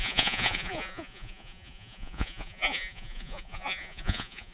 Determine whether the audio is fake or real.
fake